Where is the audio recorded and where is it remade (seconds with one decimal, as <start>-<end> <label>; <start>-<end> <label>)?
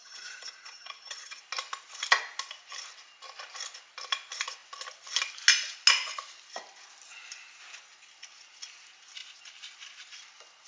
0.0-1.4 remade; 1.4-10.7 recorded